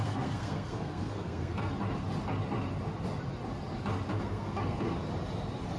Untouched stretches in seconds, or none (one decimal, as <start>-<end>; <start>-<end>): 1.7-4.1; 5.0-5.8